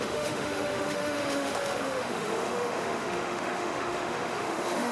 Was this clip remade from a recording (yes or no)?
yes